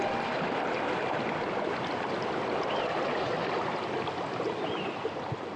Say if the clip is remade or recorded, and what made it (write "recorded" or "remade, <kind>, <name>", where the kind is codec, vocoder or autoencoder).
recorded